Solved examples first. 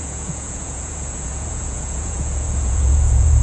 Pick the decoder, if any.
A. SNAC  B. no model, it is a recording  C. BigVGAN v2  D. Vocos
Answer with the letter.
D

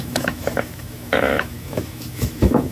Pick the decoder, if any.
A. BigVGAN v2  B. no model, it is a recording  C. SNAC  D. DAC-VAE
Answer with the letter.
D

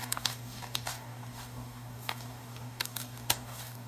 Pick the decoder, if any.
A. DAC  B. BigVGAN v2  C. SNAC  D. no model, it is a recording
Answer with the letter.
A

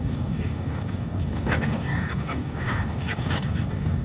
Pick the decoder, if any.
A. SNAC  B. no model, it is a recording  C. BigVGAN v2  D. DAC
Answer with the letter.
D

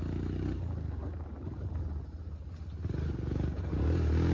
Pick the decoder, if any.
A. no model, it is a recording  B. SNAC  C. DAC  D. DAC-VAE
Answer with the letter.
A